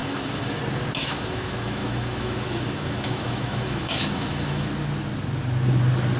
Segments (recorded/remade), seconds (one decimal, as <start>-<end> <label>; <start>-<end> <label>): 0.0-0.6 remade; 0.6-1.0 recorded; 1.0-4.7 remade; 4.7-6.2 recorded